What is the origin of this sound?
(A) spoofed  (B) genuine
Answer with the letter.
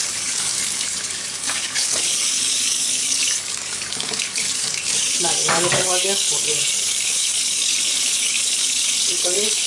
A